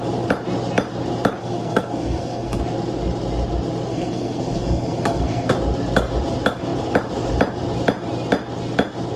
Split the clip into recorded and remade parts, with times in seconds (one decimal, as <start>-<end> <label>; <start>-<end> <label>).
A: 0.0-1.4 recorded; 1.4-2.6 remade; 2.6-3.9 recorded; 3.9-5.5 remade; 5.5-9.2 recorded